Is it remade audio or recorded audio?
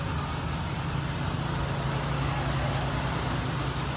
recorded